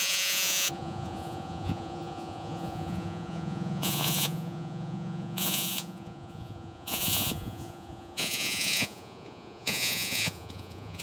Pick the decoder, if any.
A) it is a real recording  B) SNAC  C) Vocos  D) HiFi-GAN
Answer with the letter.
C